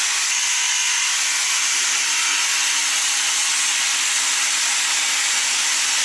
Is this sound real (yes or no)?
yes